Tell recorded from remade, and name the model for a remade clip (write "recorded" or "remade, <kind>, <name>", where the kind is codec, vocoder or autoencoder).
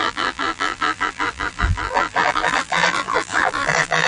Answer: remade, vocoder, BigVGAN v2